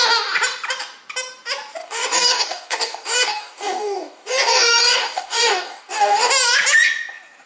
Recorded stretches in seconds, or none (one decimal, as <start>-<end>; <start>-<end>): 0.0-1.8; 6.3-7.5